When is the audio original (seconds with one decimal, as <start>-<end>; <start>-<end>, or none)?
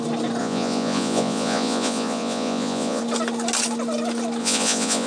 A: 0.0-0.4; 3.0-4.4